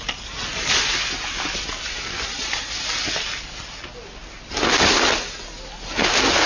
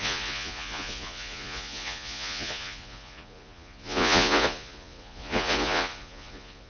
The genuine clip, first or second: first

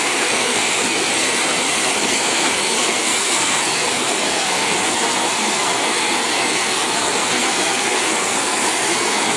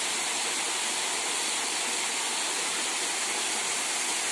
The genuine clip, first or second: second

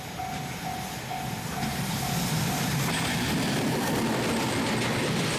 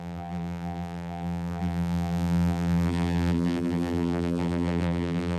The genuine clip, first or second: first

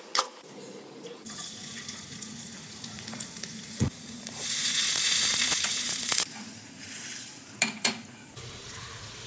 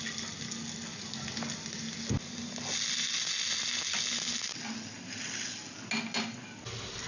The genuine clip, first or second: second